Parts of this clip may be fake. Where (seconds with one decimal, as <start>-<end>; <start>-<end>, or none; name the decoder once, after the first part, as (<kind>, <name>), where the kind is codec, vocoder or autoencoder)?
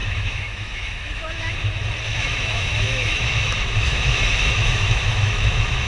0.0-1.5 (autoencoder, DAC-VAE); 2.1-5.9